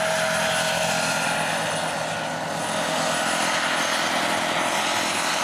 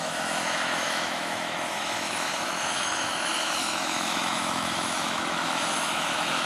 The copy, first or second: second